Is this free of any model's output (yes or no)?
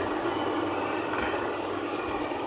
yes